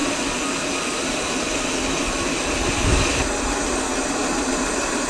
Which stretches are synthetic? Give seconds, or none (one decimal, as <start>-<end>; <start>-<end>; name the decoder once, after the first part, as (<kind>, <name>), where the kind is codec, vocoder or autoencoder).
none